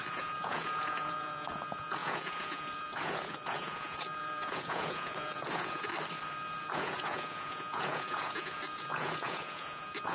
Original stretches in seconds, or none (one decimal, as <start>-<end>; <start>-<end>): 5.9-6.6